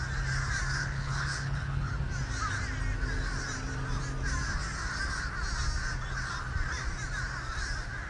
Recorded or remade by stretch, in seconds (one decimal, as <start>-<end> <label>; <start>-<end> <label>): 0.0-0.8 recorded; 0.8-1.9 remade; 1.9-8.1 recorded